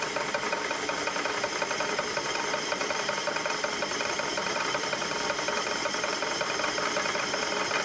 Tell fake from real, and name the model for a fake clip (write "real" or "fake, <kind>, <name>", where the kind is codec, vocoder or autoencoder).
fake, vocoder, BigVGAN v2